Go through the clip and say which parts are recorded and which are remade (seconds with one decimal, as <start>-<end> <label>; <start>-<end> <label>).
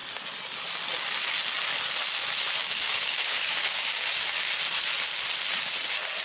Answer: 0.0-2.6 recorded; 2.6-4.1 remade; 4.1-6.2 recorded